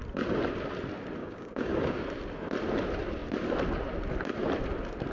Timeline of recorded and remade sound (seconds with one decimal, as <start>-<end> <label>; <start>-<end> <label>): 0.0-1.2 recorded; 1.2-2.0 remade; 2.0-5.1 recorded